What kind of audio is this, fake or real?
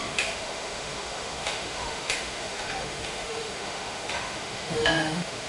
fake